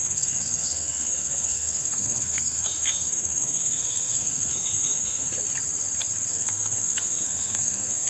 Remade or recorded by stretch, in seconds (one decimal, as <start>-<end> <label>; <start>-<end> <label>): 0.0-5.3 remade; 5.3-6.3 recorded; 6.3-8.1 remade